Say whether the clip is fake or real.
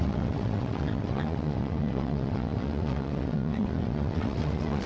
fake